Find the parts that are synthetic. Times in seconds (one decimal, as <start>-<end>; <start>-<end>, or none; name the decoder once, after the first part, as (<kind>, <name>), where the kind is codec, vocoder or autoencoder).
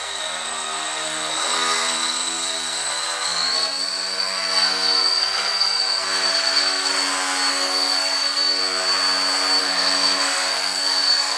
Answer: 0.0-6.9 (codec, SNAC); 7.5-8.6; 9.6-11.4